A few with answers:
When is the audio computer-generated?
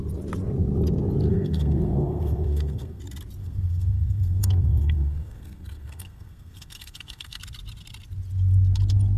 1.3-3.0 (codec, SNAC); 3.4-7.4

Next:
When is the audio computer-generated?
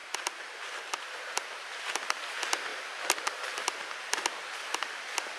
none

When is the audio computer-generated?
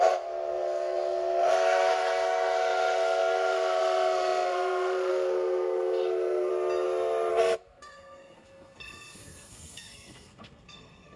0.0-6.5 (codec, SNAC); 7.3-11.2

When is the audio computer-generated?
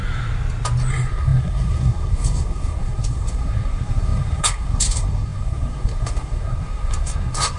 0.9-7.6 (codec, SNAC)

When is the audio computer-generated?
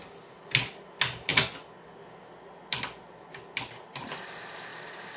none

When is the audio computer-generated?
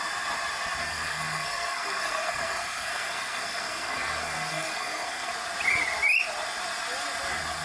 0.8-5.3 (codec, SNAC)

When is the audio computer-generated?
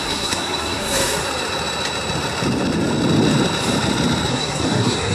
0.0-1.2 (codec, SNAC); 4.3-5.1